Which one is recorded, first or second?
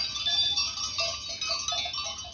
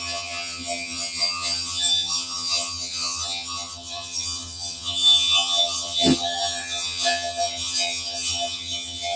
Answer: first